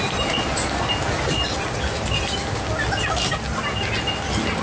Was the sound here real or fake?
real